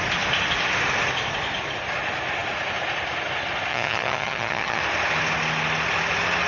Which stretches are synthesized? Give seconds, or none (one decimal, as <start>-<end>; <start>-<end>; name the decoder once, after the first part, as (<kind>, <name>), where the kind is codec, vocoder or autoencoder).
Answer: 3.7-4.8 (vocoder, HiFi-GAN)

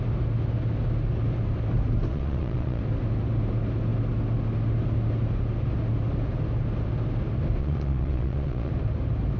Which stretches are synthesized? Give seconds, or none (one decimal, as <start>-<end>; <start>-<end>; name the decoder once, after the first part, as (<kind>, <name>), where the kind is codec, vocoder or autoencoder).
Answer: 2.1-2.8 (vocoder, Vocos); 7.6-8.7

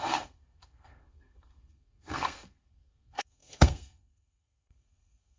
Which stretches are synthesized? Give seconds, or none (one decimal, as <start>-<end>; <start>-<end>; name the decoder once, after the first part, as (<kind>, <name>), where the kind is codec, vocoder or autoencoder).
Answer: 0.0-5.4 (codec, SNAC)

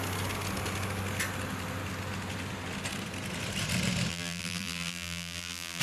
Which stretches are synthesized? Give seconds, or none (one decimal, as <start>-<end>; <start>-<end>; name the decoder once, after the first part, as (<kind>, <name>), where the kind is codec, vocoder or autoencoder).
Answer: 4.1-5.8 (vocoder, BigVGAN v2)

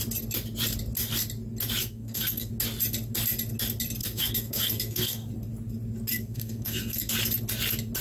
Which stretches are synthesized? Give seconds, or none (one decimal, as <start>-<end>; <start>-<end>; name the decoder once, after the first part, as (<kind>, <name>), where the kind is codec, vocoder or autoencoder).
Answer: 1.8-2.5 (codec, SNAC); 4.0-5.3; 6.1-7.1

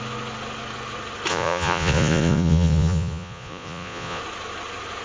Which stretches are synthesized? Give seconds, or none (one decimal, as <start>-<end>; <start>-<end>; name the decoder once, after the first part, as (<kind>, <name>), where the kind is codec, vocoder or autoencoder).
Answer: 1.3-4.2 (vocoder, Vocos)

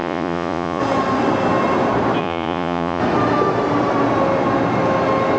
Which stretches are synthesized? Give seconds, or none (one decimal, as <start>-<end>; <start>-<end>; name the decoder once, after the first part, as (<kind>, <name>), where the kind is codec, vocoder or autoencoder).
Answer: 0.0-0.8 (vocoder, Vocos); 2.2-3.0

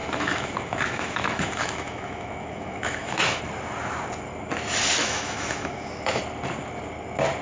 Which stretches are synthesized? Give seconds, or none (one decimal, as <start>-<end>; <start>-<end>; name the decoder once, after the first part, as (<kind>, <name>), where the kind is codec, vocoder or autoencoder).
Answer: 0.0-3.4 (autoencoder, DAC-VAE); 5.0-6.2